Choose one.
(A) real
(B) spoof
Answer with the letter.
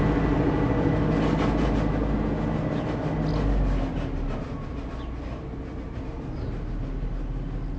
A